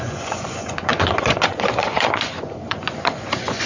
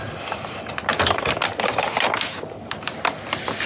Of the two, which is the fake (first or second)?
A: first